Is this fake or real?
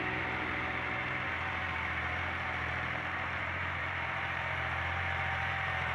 fake